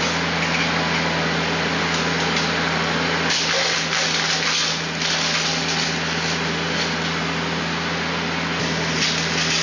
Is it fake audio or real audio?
real